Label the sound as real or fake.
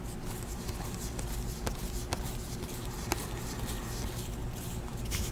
real